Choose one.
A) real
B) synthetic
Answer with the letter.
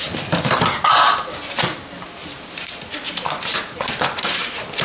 A